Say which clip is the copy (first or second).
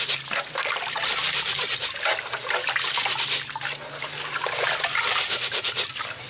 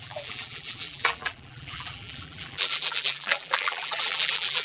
second